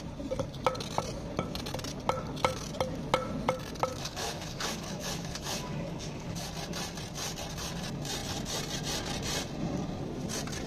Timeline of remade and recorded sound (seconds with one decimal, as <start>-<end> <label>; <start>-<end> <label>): 0.0-3.9 recorded; 3.9-6.5 remade; 6.5-10.7 recorded